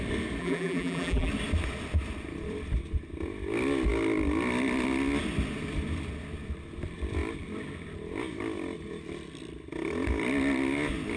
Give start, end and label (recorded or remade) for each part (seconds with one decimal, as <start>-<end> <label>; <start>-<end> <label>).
0.0-0.4 recorded; 0.4-1.3 remade; 1.3-11.2 recorded